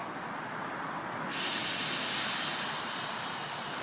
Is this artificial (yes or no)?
no